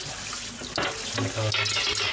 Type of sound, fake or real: real